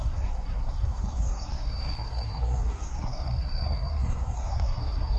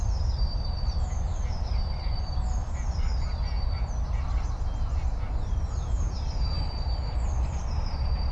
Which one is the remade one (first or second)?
first